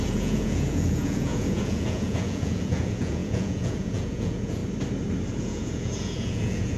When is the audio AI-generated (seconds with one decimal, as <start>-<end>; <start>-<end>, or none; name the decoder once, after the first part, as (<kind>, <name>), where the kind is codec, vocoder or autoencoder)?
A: 0.0-4.6 (vocoder, Vocos); 5.4-6.8